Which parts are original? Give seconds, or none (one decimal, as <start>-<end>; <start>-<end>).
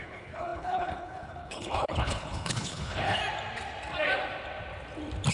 3.2-5.3